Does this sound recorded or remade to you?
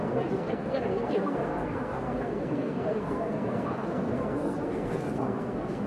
remade